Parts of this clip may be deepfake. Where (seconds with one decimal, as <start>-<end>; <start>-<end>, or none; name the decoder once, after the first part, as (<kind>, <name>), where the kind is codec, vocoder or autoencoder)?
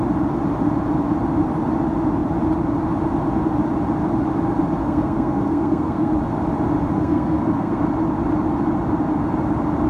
4.8-6.1 (codec, SNAC); 6.9-7.8